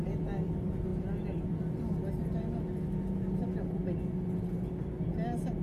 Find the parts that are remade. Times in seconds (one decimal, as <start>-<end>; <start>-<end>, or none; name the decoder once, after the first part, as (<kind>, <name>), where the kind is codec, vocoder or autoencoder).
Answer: none